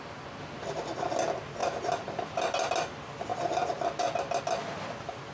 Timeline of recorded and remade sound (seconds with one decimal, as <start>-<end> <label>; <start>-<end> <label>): 0.0-5.3 recorded